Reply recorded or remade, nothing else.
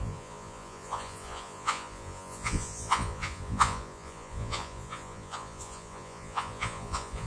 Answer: remade